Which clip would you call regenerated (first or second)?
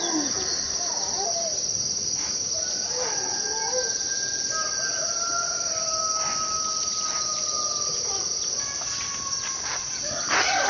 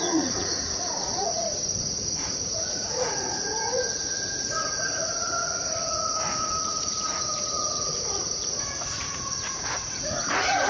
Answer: second